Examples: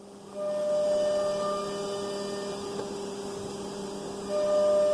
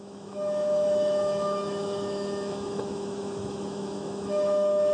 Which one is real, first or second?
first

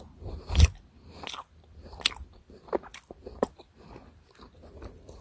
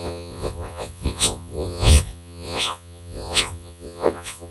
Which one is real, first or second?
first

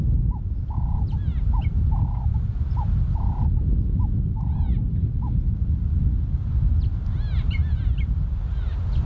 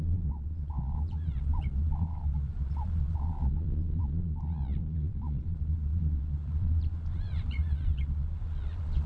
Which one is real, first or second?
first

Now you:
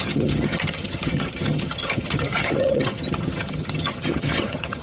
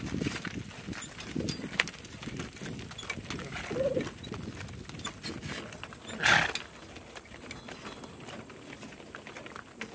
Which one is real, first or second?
second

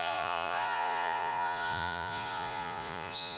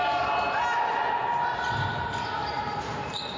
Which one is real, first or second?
second